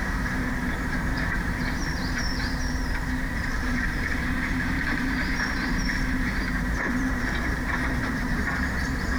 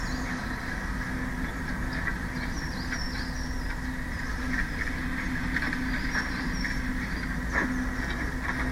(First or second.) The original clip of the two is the second